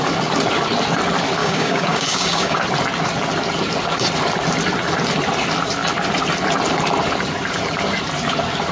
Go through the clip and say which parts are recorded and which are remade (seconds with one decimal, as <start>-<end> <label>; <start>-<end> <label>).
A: 0.0-1.4 recorded; 1.4-2.6 remade; 2.6-8.7 recorded